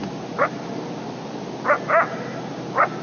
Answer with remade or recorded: recorded